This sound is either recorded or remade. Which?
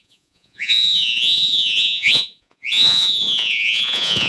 remade